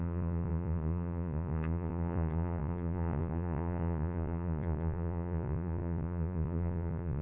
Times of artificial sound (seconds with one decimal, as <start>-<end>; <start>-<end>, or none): 0.0-7.2